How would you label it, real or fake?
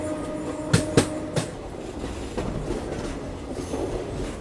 real